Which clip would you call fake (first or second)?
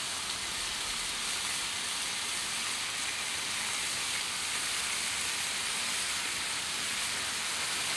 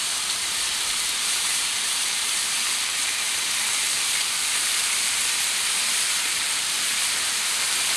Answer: second